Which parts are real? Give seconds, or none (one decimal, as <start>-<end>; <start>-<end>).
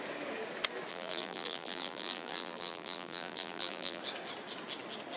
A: 0.0-0.9; 4.0-5.2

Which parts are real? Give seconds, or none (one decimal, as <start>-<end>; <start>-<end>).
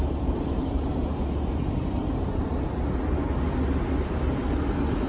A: 0.0-5.1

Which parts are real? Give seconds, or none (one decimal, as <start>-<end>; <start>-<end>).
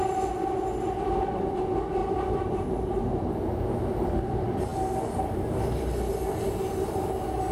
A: 0.0-2.0; 3.2-7.5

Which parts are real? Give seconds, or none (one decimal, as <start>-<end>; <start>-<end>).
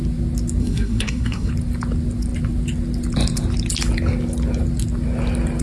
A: 0.0-0.6; 1.5-5.6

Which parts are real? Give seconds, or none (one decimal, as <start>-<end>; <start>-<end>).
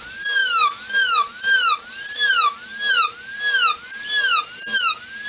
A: 0.0-5.3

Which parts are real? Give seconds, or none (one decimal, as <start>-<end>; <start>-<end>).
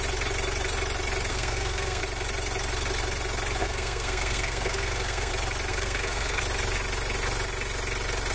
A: 0.0-1.3; 2.0-3.6; 5.3-5.7; 6.4-8.3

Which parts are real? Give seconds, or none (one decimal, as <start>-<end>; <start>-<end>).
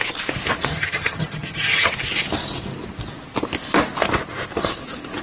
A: 0.0-0.7; 1.9-5.2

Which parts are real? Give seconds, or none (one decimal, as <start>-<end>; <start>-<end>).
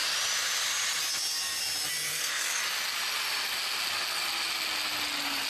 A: 0.0-2.1; 2.6-5.5